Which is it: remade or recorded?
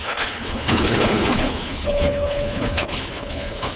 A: remade